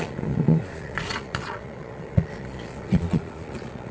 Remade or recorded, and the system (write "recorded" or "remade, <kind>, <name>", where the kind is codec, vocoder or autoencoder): remade, vocoder, Vocos